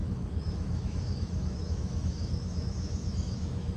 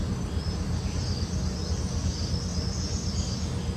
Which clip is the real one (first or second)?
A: second